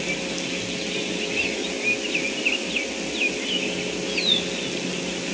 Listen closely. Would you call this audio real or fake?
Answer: real